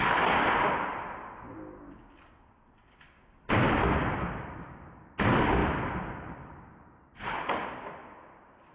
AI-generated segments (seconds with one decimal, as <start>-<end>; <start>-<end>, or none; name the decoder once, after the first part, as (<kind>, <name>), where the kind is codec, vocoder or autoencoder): none